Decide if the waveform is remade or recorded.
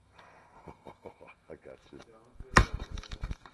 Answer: remade